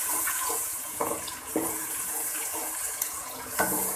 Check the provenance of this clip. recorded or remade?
remade